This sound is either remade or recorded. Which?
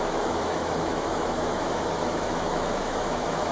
remade